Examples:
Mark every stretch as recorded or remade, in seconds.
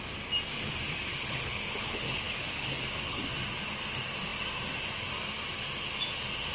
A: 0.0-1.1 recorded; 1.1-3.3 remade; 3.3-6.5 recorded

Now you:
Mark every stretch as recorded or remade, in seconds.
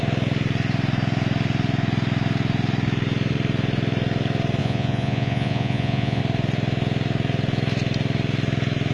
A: 0.0-4.6 recorded; 4.6-6.2 remade; 6.2-8.9 recorded